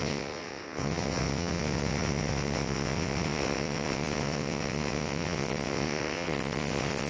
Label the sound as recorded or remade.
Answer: remade